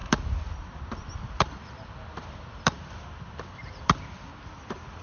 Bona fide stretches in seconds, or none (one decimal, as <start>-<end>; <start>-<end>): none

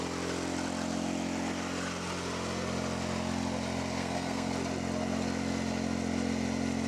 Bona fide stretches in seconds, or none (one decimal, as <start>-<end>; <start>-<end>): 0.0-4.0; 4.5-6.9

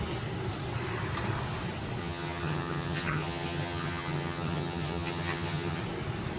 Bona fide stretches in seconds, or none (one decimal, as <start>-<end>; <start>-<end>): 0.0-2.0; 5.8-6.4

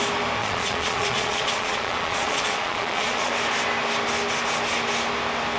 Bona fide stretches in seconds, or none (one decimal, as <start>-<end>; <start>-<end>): 0.0-0.4; 3.3-5.6

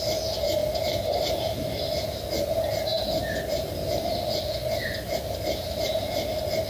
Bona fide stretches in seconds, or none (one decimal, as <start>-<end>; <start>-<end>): 0.0-6.7

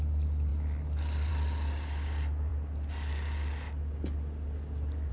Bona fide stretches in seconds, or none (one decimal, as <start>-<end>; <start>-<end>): 0.0-5.1

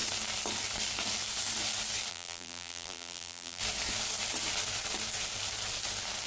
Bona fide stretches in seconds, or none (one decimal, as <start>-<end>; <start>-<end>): 0.0-2.1; 3.6-6.3